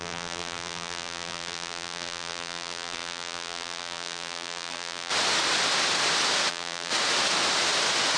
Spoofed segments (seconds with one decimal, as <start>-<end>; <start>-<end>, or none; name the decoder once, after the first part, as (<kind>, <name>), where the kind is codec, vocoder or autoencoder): 0.0-5.1 (vocoder, BigVGAN v2); 6.5-6.9